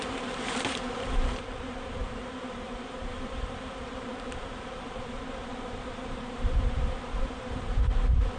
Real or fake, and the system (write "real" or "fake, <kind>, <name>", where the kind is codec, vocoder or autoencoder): fake, vocoder, BigVGAN v2